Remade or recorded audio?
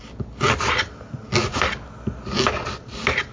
recorded